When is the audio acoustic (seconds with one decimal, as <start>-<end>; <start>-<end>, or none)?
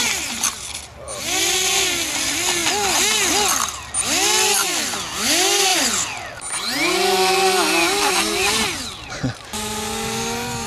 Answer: 0.0-10.7